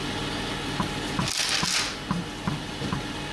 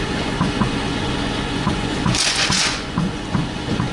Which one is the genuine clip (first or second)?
first